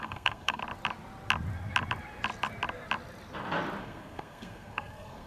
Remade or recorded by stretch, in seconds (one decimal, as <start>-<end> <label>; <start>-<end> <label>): 0.0-0.6 remade; 0.6-3.8 recorded; 3.8-5.3 remade